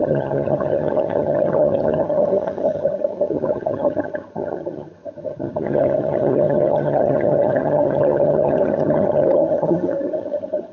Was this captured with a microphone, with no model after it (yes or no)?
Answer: no